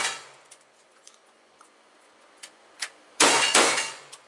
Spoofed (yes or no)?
yes